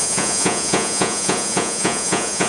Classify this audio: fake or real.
fake